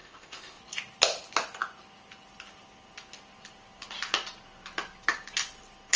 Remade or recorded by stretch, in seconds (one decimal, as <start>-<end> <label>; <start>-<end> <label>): 0.0-0.6 remade; 0.6-6.0 recorded